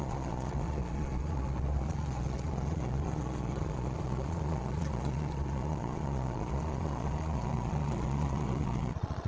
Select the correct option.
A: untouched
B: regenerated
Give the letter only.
B